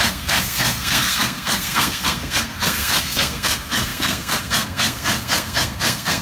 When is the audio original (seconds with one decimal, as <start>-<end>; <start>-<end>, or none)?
none